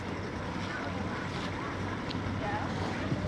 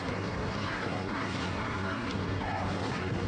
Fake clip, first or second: second